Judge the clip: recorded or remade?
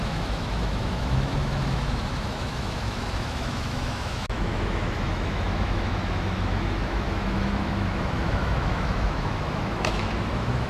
remade